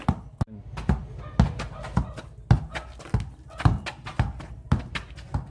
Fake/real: real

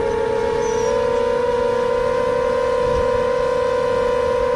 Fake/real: real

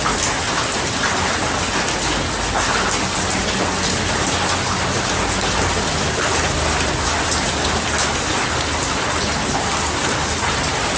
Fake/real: real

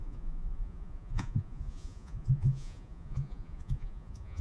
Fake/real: fake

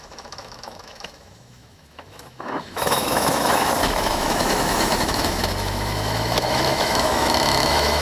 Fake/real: fake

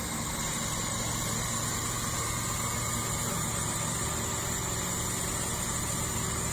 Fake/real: real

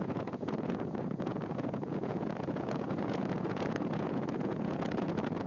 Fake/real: fake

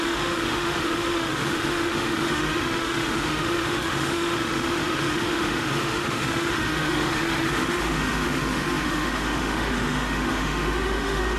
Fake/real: fake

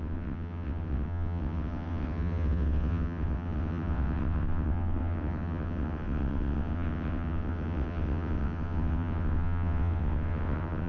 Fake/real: fake